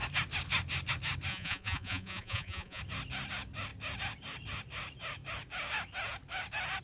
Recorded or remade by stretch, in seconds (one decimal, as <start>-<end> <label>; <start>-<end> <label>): 0.0-1.3 recorded; 1.3-2.8 remade; 2.8-6.8 recorded

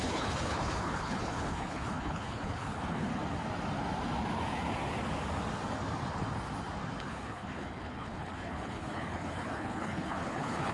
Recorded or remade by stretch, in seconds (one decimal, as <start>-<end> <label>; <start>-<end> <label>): 0.0-3.1 remade; 3.1-7.0 recorded; 7.0-10.7 remade

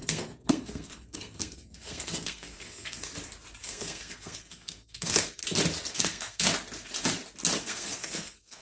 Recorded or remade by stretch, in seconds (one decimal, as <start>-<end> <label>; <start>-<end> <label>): 0.0-3.1 remade; 3.1-3.6 recorded; 3.6-5.4 remade; 5.4-5.9 recorded; 5.9-6.5 remade; 6.5-7.6 recorded; 7.6-8.6 remade

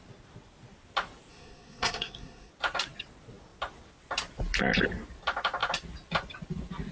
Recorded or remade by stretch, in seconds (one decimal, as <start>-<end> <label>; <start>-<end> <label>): 0.0-1.3 recorded; 1.3-2.5 remade; 2.5-6.9 recorded

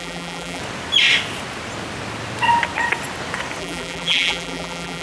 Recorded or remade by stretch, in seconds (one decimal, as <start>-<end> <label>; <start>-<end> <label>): 0.0-0.6 remade; 0.6-3.6 recorded; 3.6-5.0 remade